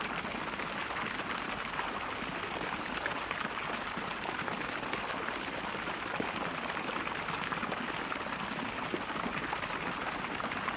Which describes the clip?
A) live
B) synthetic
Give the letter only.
A